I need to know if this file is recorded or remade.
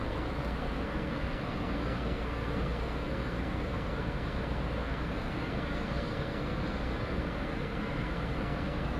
remade